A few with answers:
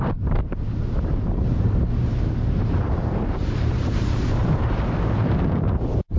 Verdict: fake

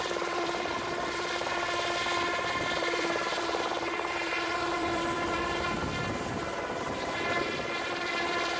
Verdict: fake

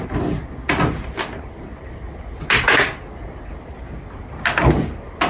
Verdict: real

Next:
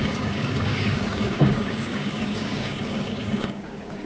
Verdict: fake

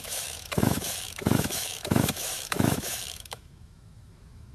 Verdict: fake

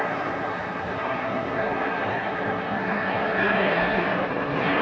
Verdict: fake